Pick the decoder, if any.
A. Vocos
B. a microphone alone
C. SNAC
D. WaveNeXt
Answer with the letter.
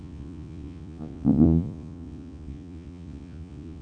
A